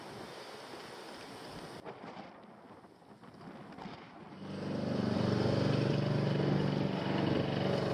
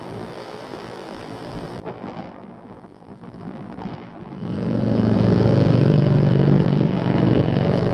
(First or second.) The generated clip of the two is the second